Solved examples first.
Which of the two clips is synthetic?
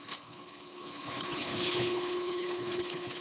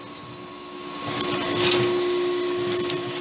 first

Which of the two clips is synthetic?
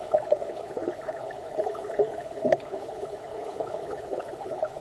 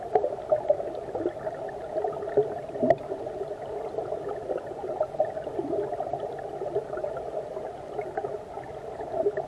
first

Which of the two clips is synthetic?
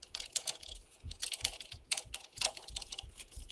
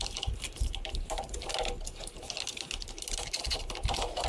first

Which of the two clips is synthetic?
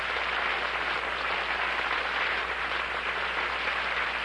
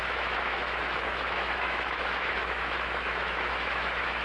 second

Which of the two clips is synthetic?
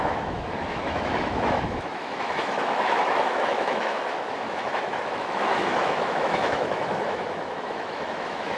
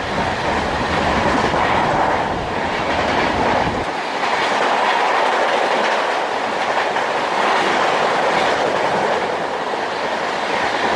first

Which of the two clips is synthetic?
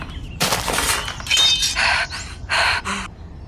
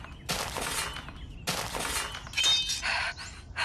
first